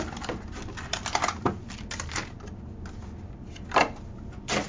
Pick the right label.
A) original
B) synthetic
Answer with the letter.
A